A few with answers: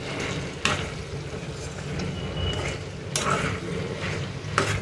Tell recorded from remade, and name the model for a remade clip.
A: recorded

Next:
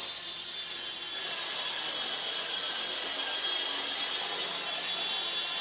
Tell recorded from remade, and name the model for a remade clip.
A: recorded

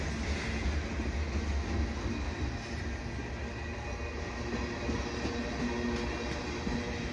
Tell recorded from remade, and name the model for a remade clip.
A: recorded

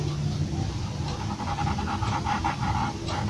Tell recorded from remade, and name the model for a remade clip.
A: recorded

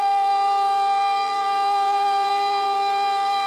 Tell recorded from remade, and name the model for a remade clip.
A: remade, vocoder, BigVGAN v2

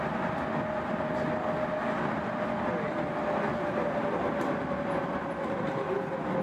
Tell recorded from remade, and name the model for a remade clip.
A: recorded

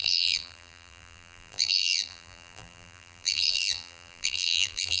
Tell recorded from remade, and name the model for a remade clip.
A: remade, vocoder, BigVGAN v2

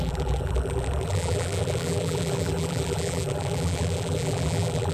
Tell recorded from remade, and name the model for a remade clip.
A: remade, vocoder, BigVGAN v2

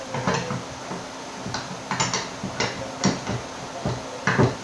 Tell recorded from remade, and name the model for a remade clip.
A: recorded